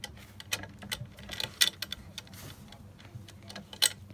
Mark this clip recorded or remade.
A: recorded